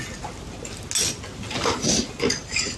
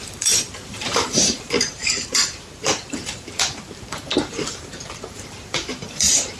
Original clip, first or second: first